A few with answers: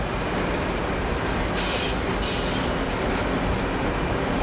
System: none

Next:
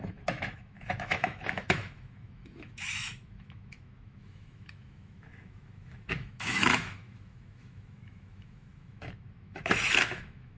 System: autoencoder, DAC-VAE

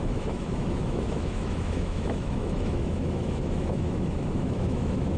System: autoencoder, DAC-VAE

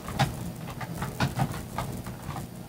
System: none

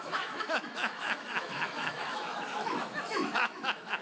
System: autoencoder, DAC-VAE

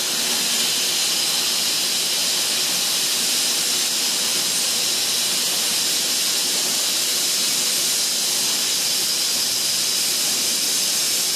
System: none